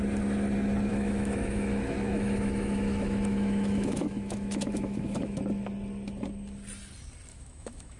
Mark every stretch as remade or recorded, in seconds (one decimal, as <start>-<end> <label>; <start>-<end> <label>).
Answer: 0.0-0.9 recorded; 0.9-5.4 remade; 5.4-7.3 recorded; 7.3-8.0 remade